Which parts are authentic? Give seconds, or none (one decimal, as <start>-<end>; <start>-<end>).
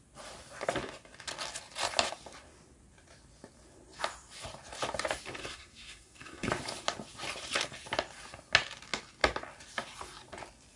0.0-5.4; 6.5-10.8